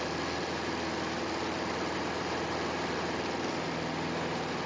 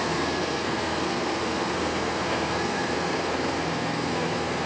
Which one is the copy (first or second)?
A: second